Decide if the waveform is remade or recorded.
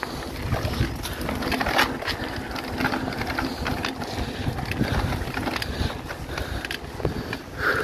recorded